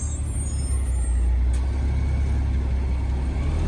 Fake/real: real